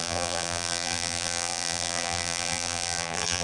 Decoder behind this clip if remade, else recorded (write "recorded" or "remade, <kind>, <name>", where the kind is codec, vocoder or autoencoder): remade, vocoder, BigVGAN v2